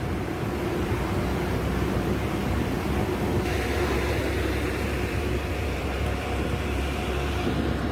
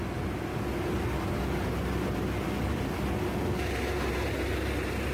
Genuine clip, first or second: second